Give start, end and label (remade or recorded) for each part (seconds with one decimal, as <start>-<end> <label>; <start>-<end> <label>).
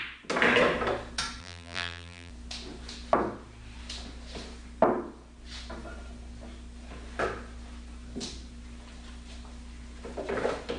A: 0.0-1.4 recorded; 1.4-2.3 remade; 2.3-10.8 recorded